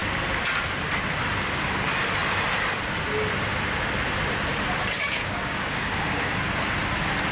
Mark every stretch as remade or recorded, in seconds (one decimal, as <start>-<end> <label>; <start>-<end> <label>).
0.0-5.0 recorded; 5.0-6.5 remade; 6.5-7.3 recorded